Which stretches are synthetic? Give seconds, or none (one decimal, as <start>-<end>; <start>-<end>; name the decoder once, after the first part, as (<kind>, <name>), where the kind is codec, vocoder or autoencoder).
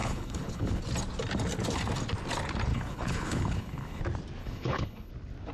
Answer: 0.0-0.8 (codec, HILCodec); 2.7-4.0; 4.4-5.1